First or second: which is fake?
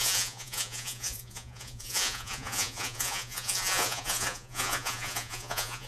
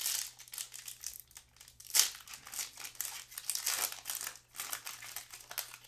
first